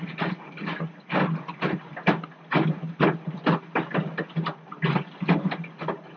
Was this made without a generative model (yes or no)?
yes